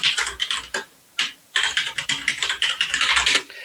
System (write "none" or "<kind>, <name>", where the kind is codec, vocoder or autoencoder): vocoder, BigVGAN v2